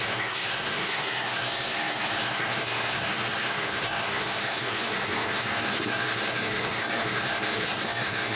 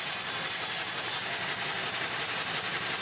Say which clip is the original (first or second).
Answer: second